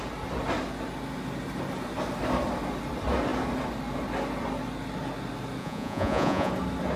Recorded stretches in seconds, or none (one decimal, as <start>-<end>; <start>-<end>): 0.0-5.6; 6.5-7.0